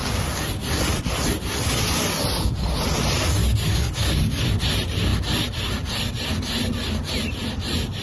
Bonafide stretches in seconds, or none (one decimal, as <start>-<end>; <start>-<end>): 0.0-3.4; 4.4-8.0